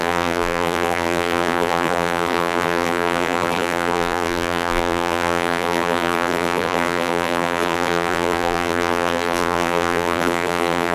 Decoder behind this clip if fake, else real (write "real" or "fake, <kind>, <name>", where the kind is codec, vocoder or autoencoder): fake, vocoder, BigVGAN v2